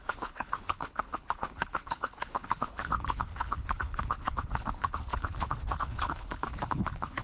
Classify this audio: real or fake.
fake